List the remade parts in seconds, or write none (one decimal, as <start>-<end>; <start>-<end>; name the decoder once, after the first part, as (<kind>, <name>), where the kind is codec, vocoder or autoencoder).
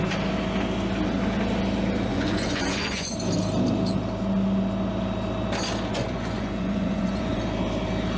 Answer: 2.1-3.1 (vocoder, Vocos); 5.9-7.4